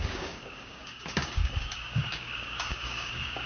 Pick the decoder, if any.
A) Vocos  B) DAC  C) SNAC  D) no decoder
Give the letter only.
B